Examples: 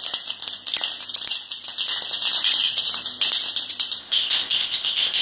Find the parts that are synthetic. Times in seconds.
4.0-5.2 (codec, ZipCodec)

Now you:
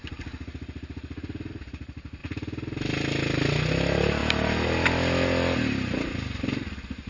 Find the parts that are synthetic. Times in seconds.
none

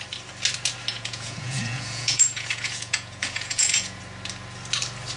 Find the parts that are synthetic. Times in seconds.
0.9-4.0 (vocoder, Vocos)

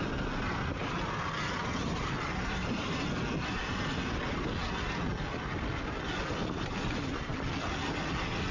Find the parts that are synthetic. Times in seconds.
2.3-3.1 (vocoder, BigVGAN v2)

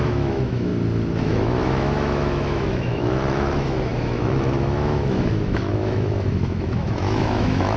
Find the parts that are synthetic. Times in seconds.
0.0-0.7 (autoencoder, DAC-VAE); 1.2-7.8

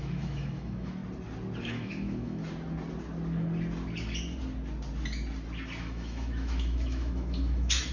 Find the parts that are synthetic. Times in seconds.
0.0-1.0 (autoencoder, DAC-VAE); 1.6-2.4; 5.8-7.9

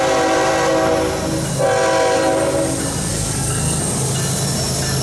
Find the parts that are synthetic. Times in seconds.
3.1-3.8 (codec, SNAC)